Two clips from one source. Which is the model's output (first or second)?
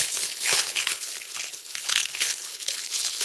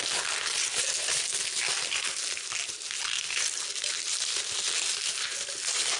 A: first